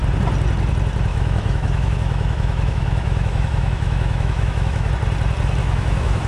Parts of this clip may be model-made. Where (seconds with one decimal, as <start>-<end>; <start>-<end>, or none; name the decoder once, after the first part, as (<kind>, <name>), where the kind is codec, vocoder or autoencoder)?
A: 1.1-4.9 (autoencoder, DAC-VAE); 5.6-6.3